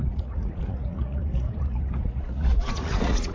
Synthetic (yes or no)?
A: yes